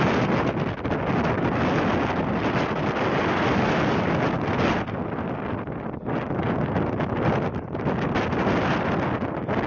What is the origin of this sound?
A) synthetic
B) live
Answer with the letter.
B